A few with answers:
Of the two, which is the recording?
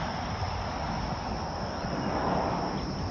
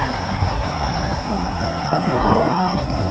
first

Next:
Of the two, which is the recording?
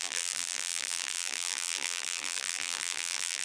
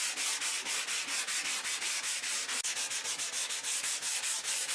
second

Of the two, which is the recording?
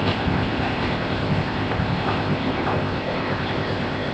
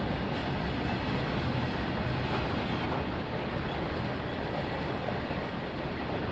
second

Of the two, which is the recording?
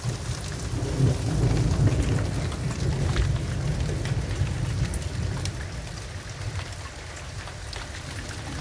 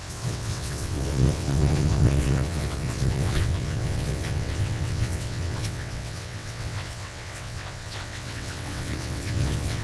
first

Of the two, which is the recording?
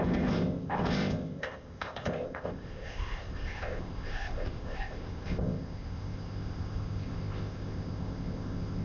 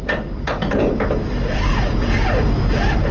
second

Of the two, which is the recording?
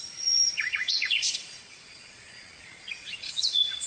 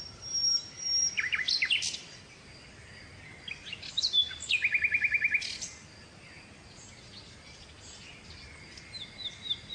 second